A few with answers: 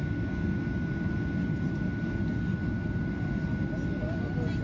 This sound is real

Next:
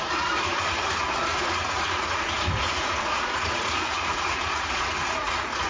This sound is fake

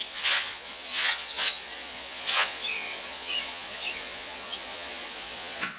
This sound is fake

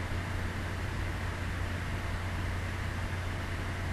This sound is real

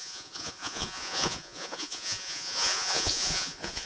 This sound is fake